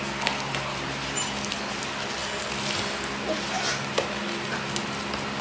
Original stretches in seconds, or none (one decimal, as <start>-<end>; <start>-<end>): 0.0-5.4